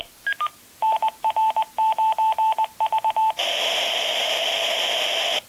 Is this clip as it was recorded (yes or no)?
yes